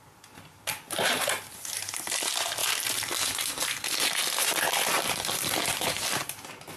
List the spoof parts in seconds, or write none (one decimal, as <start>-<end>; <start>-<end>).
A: 2.6-3.8